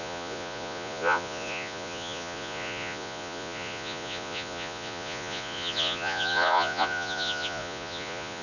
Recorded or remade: remade